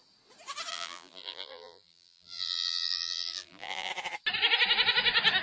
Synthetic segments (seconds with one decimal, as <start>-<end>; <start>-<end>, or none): 0.7-3.9